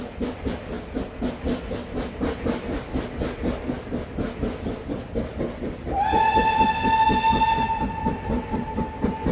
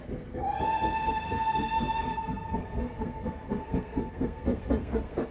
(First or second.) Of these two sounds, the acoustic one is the first